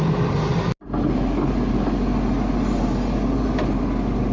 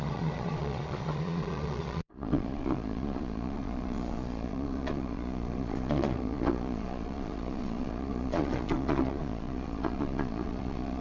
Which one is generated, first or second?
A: second